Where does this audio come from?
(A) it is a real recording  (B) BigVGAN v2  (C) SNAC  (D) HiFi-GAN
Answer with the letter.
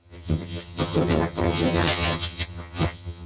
D